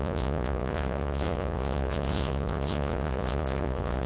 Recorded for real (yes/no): no